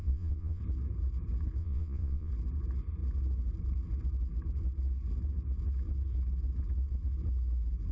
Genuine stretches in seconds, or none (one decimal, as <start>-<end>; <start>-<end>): 0.6-1.6; 2.3-7.9

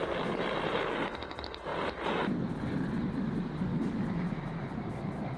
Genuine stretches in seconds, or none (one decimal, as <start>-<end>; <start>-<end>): 0.0-5.4

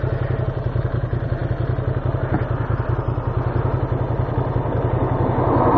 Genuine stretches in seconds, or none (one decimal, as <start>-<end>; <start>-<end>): 0.0-5.8